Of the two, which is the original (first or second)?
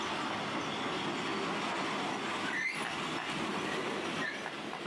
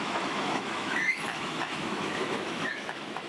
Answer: first